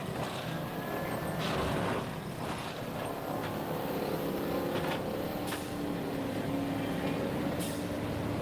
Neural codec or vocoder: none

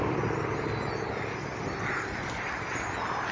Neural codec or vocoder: vocoder, BigVGAN v2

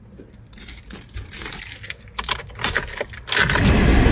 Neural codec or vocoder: none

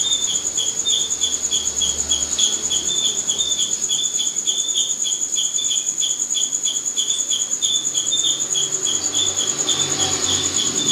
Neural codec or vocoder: none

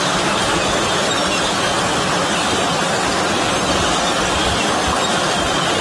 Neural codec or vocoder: none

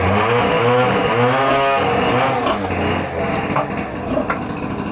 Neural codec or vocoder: none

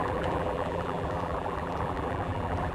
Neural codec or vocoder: vocoder, BigVGAN v2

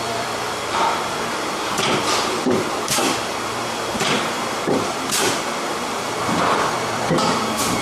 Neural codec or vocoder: vocoder, BigVGAN v2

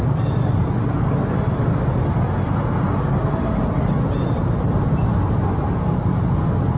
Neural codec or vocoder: none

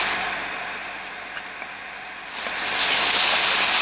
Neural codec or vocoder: vocoder, BigVGAN v2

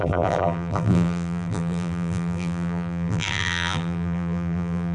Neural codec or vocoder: vocoder, BigVGAN v2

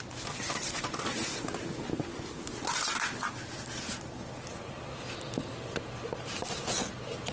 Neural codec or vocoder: none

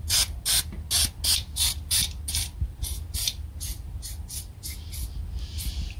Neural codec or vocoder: none